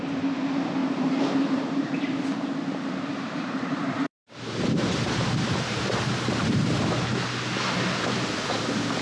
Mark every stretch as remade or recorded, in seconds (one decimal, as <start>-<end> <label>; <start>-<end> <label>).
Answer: 0.0-0.8 recorded; 0.8-2.2 remade; 2.2-3.1 recorded; 3.1-7.0 remade; 7.0-9.0 recorded